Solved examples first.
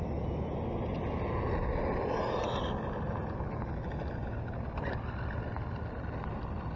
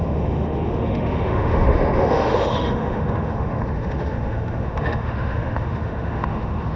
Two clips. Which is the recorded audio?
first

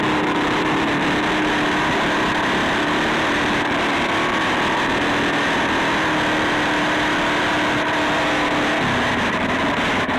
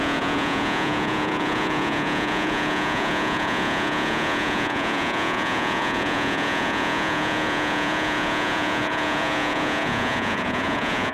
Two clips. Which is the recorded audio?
first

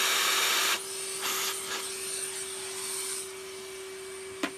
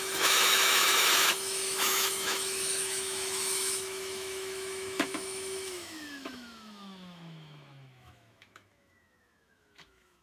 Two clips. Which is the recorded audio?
first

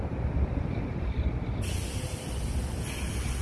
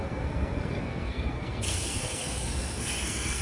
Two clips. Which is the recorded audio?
first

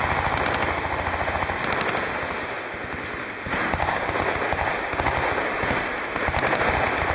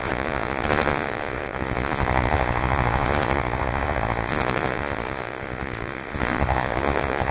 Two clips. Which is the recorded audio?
first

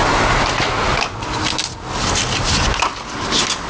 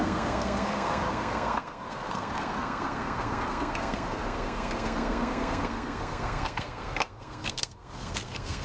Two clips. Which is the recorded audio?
first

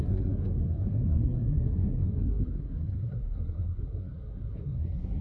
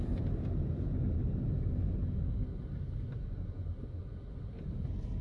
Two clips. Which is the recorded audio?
second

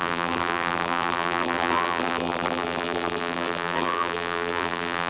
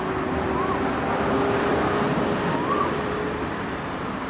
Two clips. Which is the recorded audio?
second